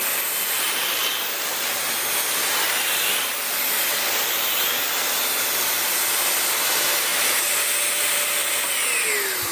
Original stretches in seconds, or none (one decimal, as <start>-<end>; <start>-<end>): 1.0-5.8; 7.1-8.0; 8.4-9.5